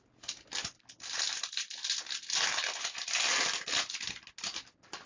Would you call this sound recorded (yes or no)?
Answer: yes